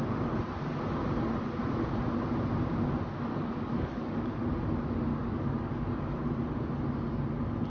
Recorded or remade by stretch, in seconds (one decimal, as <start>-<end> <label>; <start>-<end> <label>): 0.0-3.3 recorded; 3.3-4.4 remade; 4.4-5.1 recorded; 5.1-6.2 remade; 6.2-7.7 recorded